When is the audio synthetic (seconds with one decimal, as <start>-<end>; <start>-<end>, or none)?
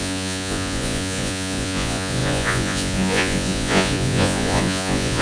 0.0-5.2